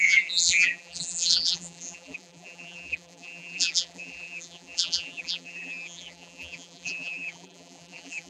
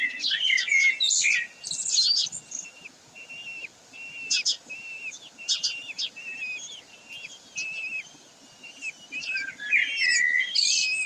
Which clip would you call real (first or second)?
second